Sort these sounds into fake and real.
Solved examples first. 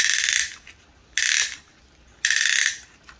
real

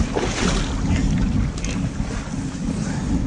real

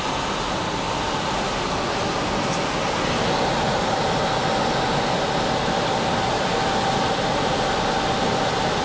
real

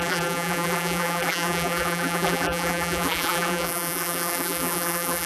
fake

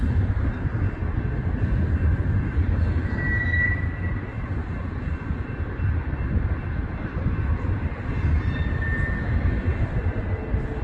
real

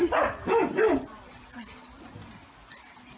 real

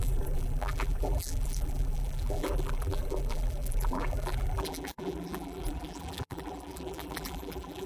fake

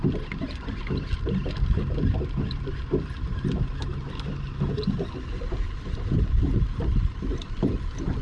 real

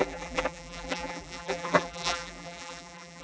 fake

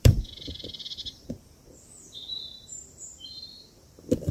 fake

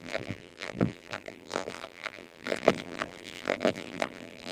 fake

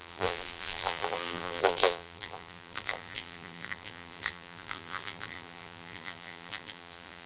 fake